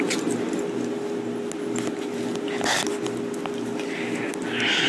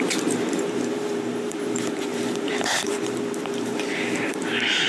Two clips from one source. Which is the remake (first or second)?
second